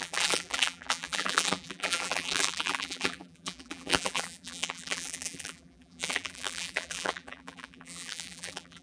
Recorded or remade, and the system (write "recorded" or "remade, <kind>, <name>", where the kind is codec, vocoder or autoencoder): remade, vocoder, BigVGAN v2